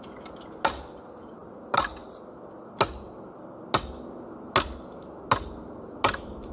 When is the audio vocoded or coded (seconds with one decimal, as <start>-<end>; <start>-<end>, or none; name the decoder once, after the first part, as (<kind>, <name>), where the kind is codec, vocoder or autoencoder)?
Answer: none